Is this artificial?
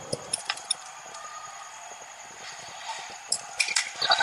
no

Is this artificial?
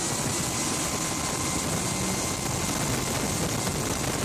no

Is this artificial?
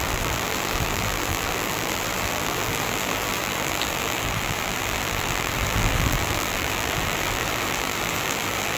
yes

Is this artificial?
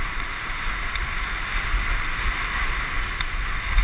no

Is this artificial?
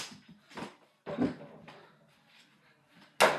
no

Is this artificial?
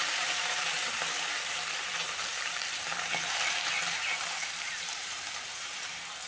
yes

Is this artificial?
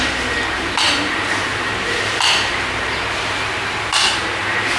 yes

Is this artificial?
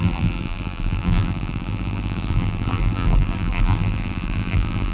yes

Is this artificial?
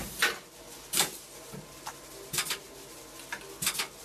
no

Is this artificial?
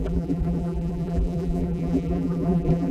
yes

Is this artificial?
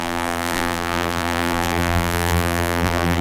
yes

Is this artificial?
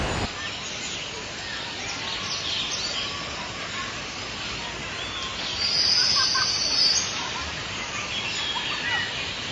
no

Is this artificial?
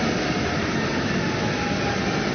no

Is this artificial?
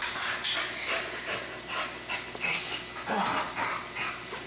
no